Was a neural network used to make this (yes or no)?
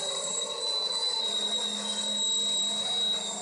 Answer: no